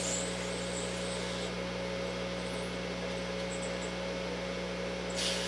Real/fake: real